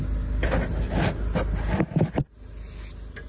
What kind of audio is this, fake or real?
real